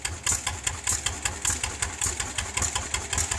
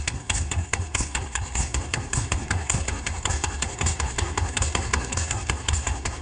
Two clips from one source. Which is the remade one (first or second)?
second